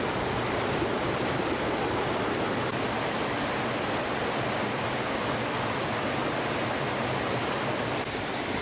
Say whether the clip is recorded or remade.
recorded